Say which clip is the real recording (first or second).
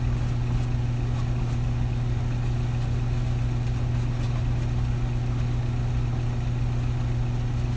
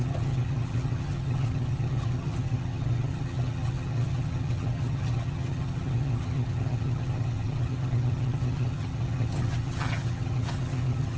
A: first